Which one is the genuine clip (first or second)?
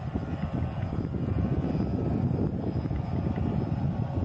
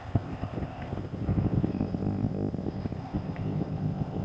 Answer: first